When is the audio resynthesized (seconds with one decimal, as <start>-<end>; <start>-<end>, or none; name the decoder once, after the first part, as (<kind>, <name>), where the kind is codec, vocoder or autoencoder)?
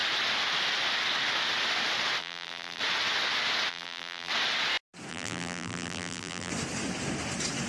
2.2-2.8 (vocoder, BigVGAN v2); 3.7-4.3; 5.1-6.5